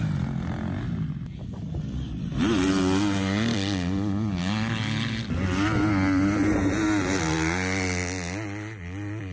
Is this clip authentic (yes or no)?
yes